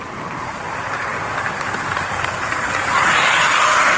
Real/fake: fake